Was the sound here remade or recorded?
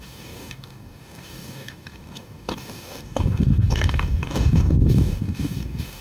remade